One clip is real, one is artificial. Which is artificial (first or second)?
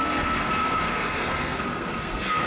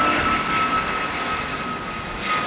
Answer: first